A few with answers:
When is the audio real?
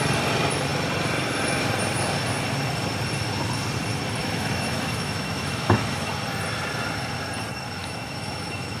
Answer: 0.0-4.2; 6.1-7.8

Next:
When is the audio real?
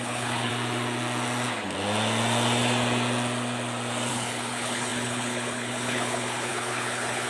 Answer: 0.5-4.1